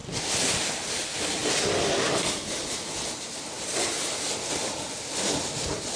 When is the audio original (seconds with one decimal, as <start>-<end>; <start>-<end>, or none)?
0.0-6.0